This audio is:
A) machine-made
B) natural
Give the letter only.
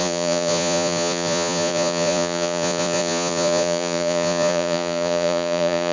A